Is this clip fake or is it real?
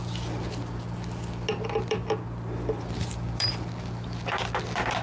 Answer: real